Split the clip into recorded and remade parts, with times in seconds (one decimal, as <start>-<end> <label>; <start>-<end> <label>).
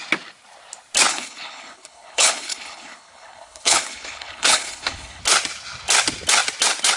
0.0-1.1 recorded; 1.1-5.2 remade; 5.2-7.0 recorded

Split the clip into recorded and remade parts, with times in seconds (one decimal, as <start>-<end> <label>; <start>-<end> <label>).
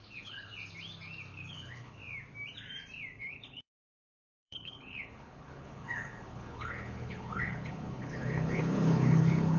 0.0-0.5 remade; 0.5-1.3 recorded; 1.3-2.0 remade; 2.0-3.2 recorded; 3.2-9.6 remade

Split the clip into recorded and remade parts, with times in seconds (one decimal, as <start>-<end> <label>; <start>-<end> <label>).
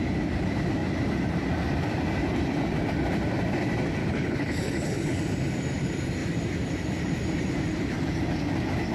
0.0-4.0 recorded; 4.0-5.2 remade; 5.2-8.9 recorded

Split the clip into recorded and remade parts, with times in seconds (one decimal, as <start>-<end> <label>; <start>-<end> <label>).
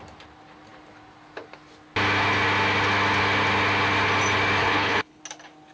0.0-4.6 recorded; 4.6-5.2 remade; 5.2-5.7 recorded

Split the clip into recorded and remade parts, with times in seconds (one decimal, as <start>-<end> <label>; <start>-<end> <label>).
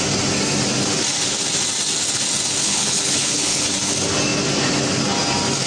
0.0-2.6 recorded; 2.6-3.6 remade; 3.6-5.7 recorded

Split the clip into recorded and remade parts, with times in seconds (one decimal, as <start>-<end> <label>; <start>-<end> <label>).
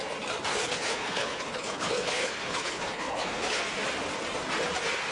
0.0-0.5 recorded; 0.5-3.6 remade; 3.6-5.1 recorded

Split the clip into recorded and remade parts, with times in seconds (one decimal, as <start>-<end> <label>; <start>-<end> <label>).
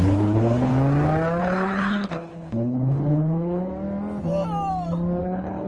0.0-0.7 remade; 0.7-1.4 recorded; 1.4-3.7 remade; 3.7-5.2 recorded; 5.2-5.7 remade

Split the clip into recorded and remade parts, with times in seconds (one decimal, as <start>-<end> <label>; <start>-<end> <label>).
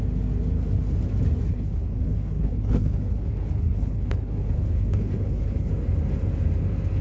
0.0-1.5 recorded; 1.5-5.7 remade; 5.7-7.0 recorded